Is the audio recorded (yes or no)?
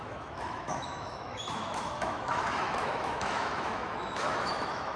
no